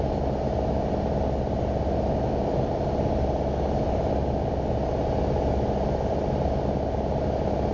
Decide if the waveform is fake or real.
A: real